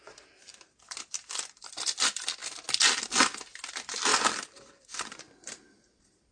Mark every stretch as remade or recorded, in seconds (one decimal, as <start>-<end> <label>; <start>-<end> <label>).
0.0-0.5 remade; 0.5-1.3 recorded; 1.3-2.4 remade; 2.4-3.1 recorded; 3.1-6.3 remade